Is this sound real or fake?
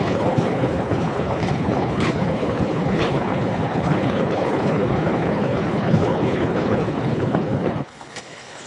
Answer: fake